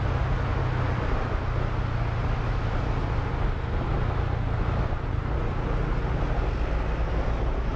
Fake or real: real